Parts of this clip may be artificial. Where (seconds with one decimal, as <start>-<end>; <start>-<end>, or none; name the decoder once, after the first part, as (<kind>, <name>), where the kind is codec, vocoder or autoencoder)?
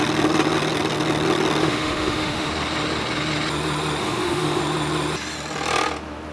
1.6-2.5 (autoencoder, DAC-VAE); 4.0-4.6